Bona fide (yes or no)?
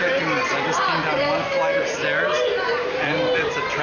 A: yes